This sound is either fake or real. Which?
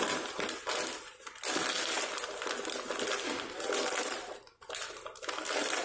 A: fake